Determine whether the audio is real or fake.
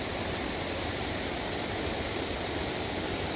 real